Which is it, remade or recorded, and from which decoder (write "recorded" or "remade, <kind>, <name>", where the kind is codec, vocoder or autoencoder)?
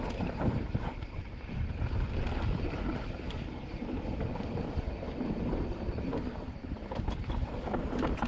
remade, vocoder, BigVGAN v2